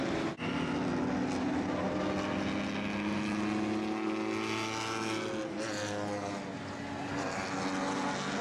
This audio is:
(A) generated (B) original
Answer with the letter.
B